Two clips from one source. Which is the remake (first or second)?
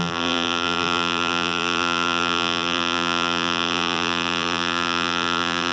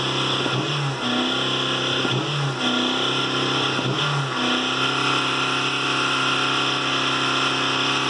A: first